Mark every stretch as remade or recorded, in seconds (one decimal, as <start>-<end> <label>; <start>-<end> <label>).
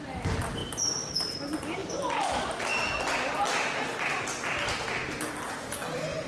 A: 0.0-6.3 recorded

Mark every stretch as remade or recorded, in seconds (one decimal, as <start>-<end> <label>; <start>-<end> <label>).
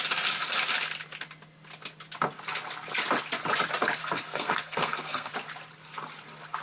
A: 0.0-4.0 recorded; 4.0-5.3 remade; 5.3-6.6 recorded